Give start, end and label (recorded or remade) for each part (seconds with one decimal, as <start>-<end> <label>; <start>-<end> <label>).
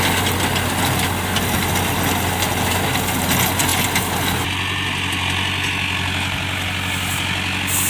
0.0-7.9 recorded